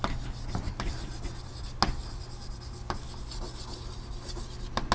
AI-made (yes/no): no